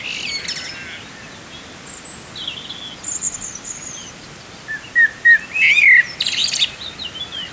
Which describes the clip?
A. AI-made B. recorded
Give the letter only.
B